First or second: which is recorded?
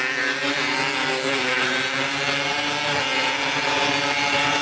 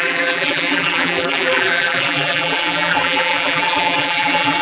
first